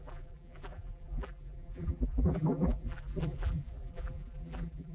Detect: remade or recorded remade